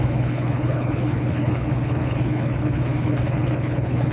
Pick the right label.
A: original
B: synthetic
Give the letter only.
B